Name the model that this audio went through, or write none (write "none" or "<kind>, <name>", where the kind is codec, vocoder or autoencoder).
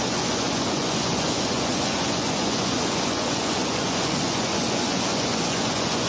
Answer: vocoder, Vocos